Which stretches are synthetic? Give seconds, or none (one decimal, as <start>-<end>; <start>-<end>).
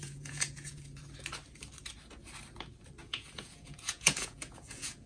0.0-1.0; 3.0-5.1